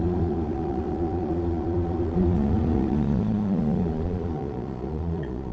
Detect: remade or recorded remade